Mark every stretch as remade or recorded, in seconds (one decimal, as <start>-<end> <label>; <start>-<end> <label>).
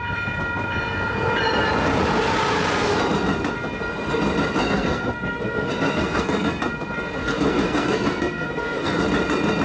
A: 0.0-4.6 recorded; 4.6-6.6 remade; 6.6-7.2 recorded; 7.2-9.0 remade; 9.0-9.6 recorded